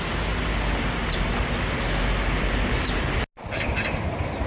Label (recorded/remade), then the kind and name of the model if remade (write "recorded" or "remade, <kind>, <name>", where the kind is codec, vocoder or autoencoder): recorded